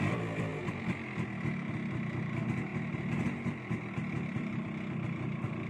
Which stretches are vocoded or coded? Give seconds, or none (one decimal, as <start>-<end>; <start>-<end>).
2.7-5.7